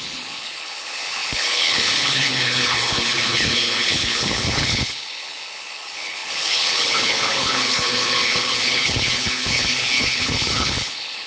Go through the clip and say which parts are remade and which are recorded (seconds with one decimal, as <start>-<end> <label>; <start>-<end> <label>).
0.0-11.3 remade